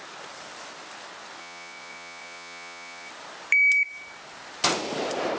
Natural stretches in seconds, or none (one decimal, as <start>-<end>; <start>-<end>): 0.0-1.4; 3.1-5.4